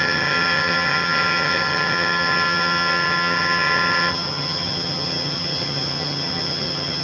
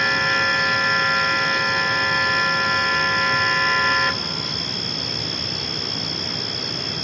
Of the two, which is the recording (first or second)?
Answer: second